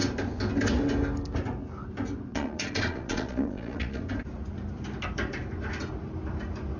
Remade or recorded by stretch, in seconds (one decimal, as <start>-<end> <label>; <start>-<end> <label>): 0.0-2.3 recorded; 2.3-4.0 remade; 4.0-6.8 recorded